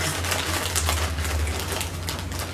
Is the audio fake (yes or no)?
no